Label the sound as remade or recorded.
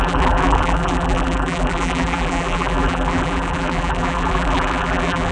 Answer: remade